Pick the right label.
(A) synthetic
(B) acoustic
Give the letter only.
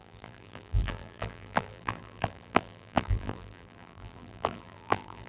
A